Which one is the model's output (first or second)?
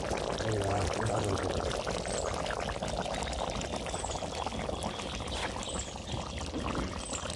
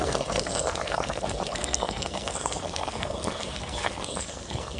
second